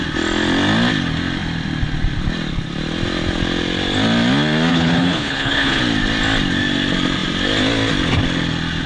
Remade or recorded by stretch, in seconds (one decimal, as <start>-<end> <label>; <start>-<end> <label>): 0.0-4.7 recorded; 4.7-5.8 remade; 5.8-8.9 recorded